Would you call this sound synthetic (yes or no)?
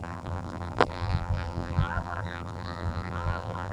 yes